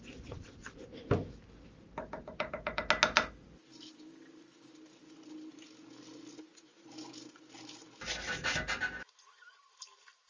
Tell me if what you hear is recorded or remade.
recorded